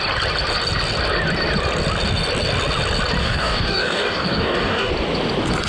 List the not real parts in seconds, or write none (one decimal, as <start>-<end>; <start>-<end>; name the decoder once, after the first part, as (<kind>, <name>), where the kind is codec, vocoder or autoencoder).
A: 3.2-4.9 (codec, DAC)